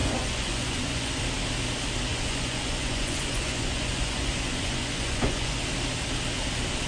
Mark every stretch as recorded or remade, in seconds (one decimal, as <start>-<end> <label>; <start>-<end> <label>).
0.0-1.2 remade; 1.2-2.1 recorded; 2.1-5.6 remade; 5.6-6.9 recorded